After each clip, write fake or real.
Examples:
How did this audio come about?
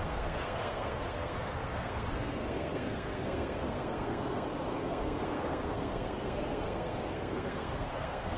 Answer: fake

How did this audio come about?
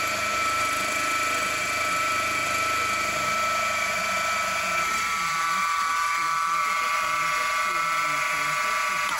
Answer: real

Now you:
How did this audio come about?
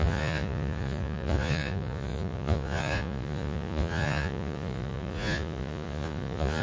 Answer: fake